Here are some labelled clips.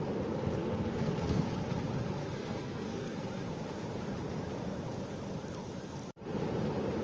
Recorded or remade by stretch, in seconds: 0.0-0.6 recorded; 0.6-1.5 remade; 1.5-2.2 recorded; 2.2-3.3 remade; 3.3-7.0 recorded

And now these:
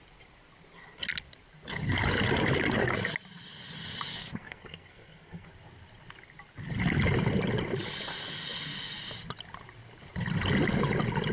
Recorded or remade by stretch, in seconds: 0.0-4.2 recorded; 4.2-5.5 remade; 5.5-11.3 recorded

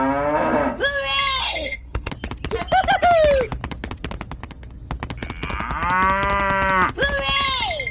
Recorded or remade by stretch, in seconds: 0.0-1.4 recorded; 1.4-2.1 remade; 2.1-7.9 recorded

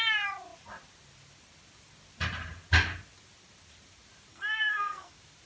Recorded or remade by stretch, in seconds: 0.0-4.3 recorded; 4.3-5.1 remade; 5.1-5.5 recorded

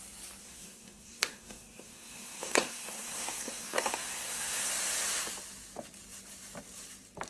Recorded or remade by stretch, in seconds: 0.0-0.4 recorded; 0.4-4.7 remade; 4.7-7.3 recorded

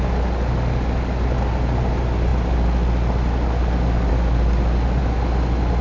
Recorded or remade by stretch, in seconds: 0.0-5.8 recorded

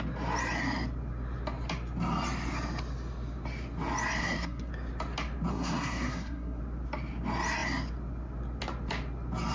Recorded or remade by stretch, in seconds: 0.0-4.2 recorded; 4.2-4.7 remade; 4.7-5.5 recorded; 5.5-6.6 remade; 6.6-9.5 recorded